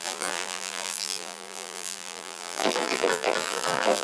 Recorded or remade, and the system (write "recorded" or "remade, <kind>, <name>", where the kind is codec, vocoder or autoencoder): remade, vocoder, BigVGAN v2